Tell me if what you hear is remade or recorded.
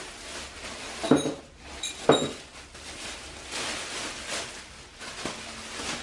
recorded